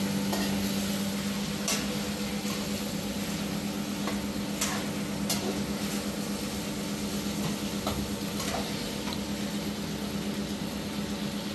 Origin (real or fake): real